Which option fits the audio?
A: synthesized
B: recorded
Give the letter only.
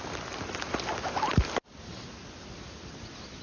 B